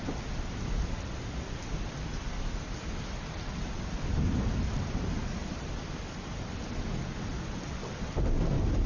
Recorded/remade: recorded